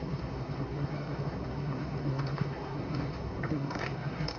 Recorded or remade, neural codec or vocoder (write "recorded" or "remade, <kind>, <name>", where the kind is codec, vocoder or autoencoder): remade, codec, SNAC